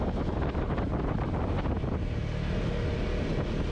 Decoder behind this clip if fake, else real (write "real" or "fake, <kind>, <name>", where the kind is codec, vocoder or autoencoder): real